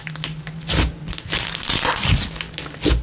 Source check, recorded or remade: recorded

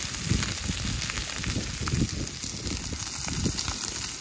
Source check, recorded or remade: recorded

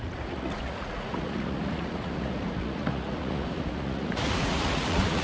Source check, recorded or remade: remade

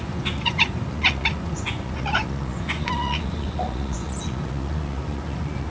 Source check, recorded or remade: remade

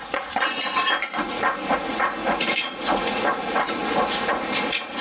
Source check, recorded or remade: remade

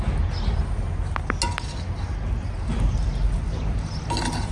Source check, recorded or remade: recorded